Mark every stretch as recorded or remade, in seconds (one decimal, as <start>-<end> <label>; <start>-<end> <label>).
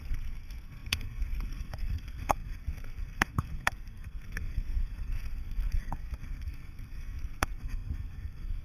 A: 0.0-8.6 remade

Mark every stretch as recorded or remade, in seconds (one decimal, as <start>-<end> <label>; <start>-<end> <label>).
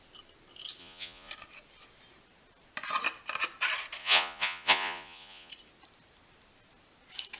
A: 0.0-0.8 recorded; 0.8-1.3 remade; 1.3-4.0 recorded; 4.0-5.5 remade; 5.5-7.4 recorded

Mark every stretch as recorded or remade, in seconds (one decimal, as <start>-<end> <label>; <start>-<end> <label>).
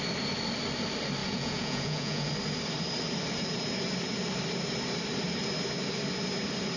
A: 0.0-1.2 recorded; 1.2-2.3 remade; 2.3-6.8 recorded